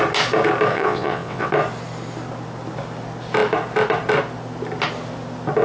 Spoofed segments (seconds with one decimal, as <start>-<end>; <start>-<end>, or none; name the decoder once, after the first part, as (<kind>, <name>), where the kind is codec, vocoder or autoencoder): 0.7-1.5 (vocoder, WaveNeXt)